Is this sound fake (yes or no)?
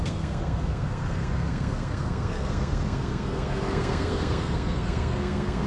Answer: yes